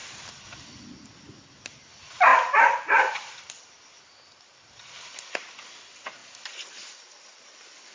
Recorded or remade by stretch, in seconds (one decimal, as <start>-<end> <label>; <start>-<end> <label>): 0.0-2.3 recorded; 2.3-4.7 remade; 4.7-6.2 recorded; 6.2-7.4 remade; 7.4-7.9 recorded